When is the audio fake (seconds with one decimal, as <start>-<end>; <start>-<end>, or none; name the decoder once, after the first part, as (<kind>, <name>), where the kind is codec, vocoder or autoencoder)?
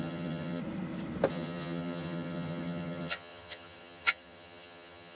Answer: 0.0-0.6 (vocoder, HiFi-GAN); 1.3-5.1